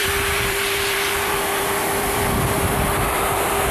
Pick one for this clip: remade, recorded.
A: remade